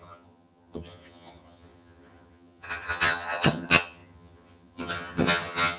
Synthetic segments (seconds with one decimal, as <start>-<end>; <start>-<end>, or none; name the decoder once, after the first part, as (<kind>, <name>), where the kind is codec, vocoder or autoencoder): 0.0-5.8 (vocoder, HiFi-GAN)